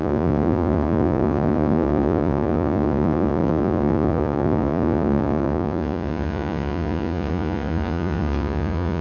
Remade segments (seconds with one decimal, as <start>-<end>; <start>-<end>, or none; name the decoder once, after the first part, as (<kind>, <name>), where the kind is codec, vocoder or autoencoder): 0.0-9.0 (vocoder, Vocos)

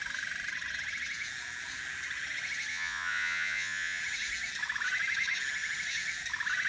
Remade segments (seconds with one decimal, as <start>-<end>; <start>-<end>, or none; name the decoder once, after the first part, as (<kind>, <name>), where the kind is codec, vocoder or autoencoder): 2.7-4.0 (vocoder, Vocos)

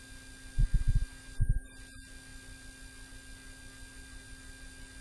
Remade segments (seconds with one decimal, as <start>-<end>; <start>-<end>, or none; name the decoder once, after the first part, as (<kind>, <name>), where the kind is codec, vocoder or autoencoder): none